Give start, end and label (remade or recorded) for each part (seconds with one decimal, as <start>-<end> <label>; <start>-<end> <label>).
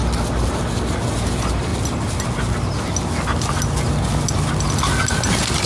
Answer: 0.0-5.7 recorded